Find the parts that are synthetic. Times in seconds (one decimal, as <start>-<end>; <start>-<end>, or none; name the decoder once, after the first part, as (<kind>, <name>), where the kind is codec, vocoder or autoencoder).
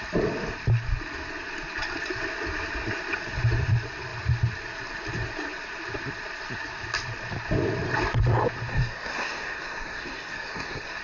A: 8.7-11.0 (codec, SNAC)